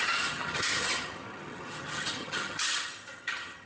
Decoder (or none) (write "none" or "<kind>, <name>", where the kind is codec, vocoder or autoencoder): vocoder, HiFi-GAN